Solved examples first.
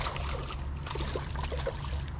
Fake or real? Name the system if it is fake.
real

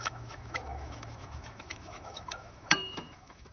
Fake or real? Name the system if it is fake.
fake, autoencoder, DAC-VAE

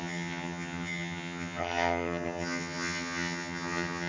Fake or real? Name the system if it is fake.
fake, vocoder, HiFi-GAN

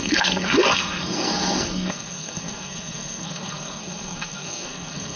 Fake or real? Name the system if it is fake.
fake, codec, SNAC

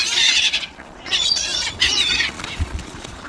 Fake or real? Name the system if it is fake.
fake, vocoder, Vocos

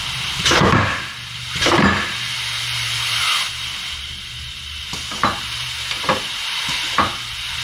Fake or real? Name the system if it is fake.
fake, vocoder, BigVGAN v2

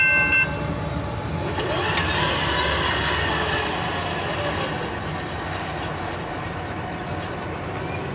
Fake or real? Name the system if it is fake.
real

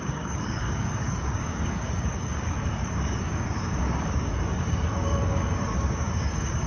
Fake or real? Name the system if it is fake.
fake, codec, DAC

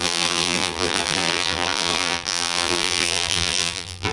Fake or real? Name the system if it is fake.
fake, vocoder, BigVGAN v2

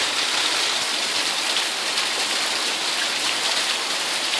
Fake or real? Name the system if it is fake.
real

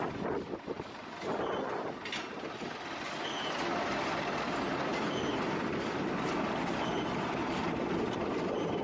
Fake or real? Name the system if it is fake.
real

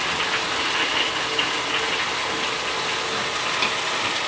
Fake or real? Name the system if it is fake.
real